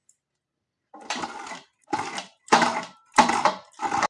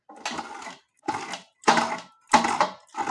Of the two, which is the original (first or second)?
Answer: second